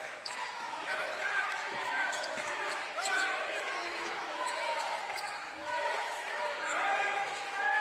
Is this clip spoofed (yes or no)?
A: yes